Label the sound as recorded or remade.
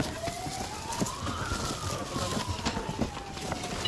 recorded